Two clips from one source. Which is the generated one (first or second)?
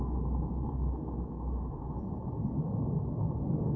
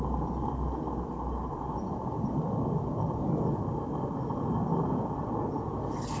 first